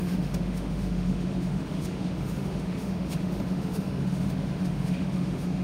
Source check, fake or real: fake